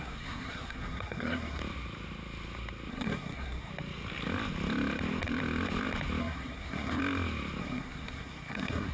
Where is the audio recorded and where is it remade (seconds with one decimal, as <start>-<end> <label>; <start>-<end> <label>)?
0.0-1.6 remade; 1.6-2.9 recorded; 2.9-3.7 remade; 3.7-6.2 recorded; 6.2-7.0 remade; 7.0-7.6 recorded; 7.6-8.9 remade